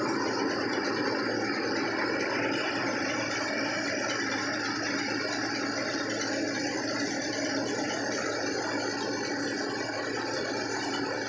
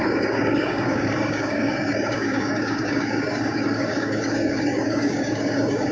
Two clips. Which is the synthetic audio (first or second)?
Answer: second